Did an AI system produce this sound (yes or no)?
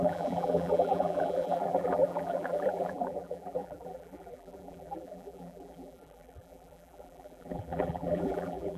yes